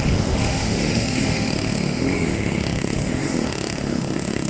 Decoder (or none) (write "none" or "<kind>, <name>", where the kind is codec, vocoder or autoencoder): autoencoder, DAC-VAE